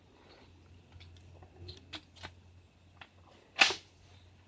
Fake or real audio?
real